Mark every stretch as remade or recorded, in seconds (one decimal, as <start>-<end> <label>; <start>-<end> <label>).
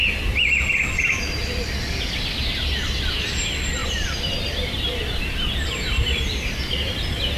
0.0-3.8 recorded; 3.8-6.9 remade; 6.9-7.4 recorded